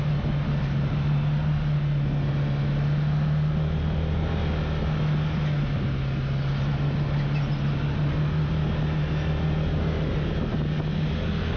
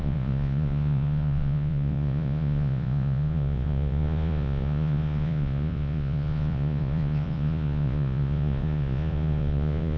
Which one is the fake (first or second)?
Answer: second